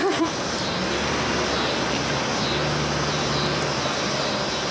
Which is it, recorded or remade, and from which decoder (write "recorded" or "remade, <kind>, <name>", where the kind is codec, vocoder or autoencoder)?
recorded